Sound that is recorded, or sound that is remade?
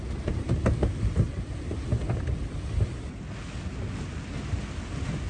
recorded